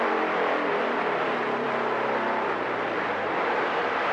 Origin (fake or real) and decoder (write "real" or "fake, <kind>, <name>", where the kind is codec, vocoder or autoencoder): fake, vocoder, BigVGAN v2